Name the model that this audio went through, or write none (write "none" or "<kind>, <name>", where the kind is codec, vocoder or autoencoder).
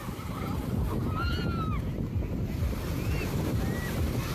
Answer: none